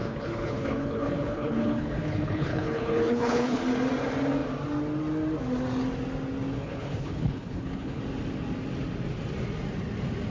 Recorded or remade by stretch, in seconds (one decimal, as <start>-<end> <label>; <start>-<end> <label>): 0.0-3.6 remade; 3.6-6.5 recorded; 6.5-8.0 remade; 8.0-10.3 recorded